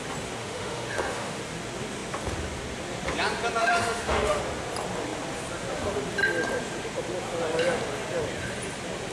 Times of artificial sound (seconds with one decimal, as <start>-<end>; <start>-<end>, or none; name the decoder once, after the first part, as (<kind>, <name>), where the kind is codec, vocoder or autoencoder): 0.4-1.4 (autoencoder, DAC-VAE); 3.6-4.4